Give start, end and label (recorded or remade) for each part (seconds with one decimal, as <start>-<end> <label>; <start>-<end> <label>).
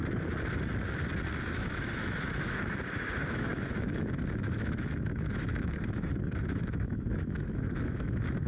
0.0-1.5 recorded; 1.5-8.5 remade